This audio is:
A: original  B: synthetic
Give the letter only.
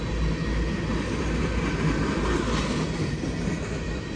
A